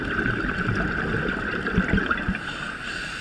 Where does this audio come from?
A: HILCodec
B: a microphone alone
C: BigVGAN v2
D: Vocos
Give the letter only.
B